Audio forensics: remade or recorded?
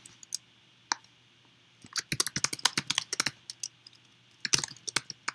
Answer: recorded